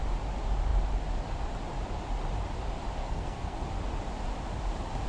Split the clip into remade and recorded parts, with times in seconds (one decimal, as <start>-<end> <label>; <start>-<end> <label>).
0.0-3.0 recorded; 3.0-3.7 remade; 3.7-5.1 recorded